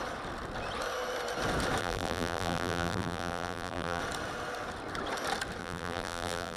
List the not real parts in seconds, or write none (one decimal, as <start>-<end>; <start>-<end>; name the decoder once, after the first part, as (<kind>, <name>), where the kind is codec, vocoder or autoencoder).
1.8-4.0 (vocoder, BigVGAN v2); 5.6-6.6